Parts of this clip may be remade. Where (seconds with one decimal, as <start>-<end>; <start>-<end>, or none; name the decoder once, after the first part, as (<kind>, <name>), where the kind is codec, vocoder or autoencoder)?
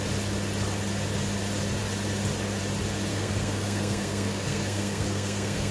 3.1-5.7 (codec, SNAC)